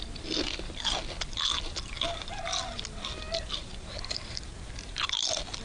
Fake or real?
real